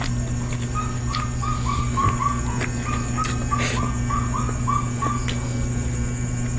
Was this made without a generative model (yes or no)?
yes